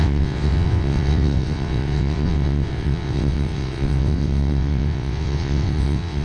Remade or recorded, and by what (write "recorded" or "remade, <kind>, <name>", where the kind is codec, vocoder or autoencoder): remade, vocoder, WaveNeXt